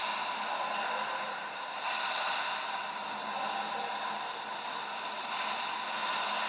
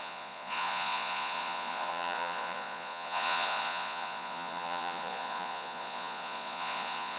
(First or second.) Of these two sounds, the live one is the first